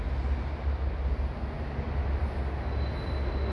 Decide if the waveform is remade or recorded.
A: recorded